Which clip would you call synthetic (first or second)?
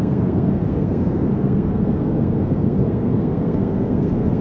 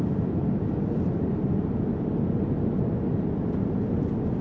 first